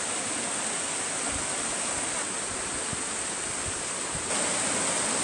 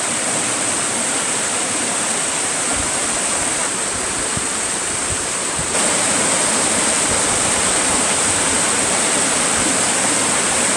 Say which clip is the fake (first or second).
second